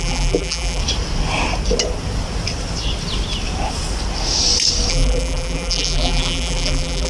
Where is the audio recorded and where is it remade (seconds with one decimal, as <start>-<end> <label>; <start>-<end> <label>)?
0.0-0.8 remade; 0.8-4.9 recorded; 4.9-7.1 remade